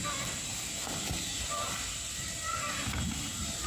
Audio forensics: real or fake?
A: real